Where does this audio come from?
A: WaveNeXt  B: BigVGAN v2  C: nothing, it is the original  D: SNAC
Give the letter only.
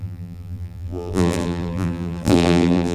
B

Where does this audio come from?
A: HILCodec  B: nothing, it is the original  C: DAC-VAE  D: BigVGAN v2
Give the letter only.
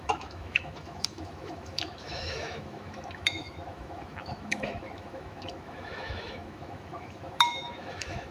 C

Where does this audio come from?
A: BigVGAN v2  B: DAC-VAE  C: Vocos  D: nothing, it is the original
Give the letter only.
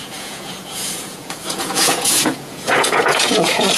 C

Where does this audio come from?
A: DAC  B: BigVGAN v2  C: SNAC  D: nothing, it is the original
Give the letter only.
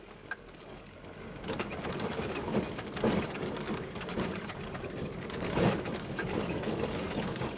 A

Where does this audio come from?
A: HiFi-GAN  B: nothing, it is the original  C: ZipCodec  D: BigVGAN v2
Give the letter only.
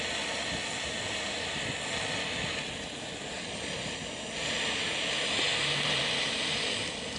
B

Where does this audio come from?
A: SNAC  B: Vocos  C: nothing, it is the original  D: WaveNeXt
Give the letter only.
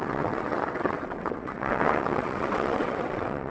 D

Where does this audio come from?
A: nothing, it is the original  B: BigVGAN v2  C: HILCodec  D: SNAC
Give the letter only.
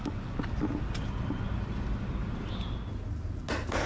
A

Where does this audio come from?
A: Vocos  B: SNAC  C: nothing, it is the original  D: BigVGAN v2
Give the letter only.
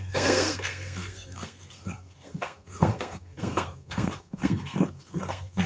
B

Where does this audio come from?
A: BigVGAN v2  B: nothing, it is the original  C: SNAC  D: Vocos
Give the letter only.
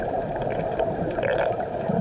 A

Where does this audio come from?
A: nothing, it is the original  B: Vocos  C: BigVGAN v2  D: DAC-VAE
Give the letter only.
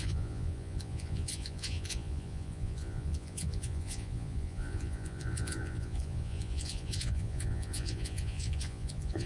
B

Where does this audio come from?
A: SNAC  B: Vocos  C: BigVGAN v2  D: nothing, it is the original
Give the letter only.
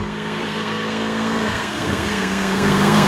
A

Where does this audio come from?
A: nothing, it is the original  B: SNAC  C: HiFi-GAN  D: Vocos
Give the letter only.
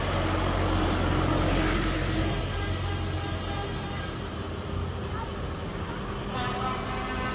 A